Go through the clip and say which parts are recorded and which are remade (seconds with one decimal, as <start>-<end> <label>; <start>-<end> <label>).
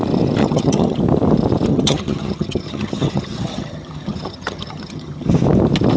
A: 0.0-0.4 recorded; 0.4-1.0 remade; 1.0-1.7 recorded; 1.7-5.3 remade; 5.3-6.0 recorded